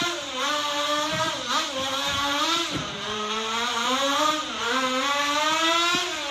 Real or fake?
fake